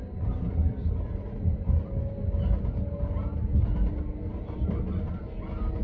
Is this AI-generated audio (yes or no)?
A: no